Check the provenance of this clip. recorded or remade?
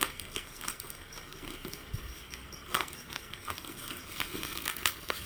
remade